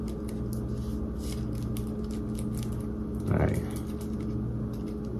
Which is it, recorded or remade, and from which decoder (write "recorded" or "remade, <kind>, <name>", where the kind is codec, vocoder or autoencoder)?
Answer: recorded